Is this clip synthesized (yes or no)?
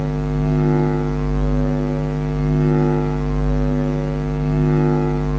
no